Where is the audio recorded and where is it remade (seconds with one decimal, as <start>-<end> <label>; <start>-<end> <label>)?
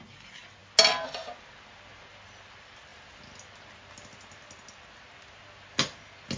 0.0-6.4 recorded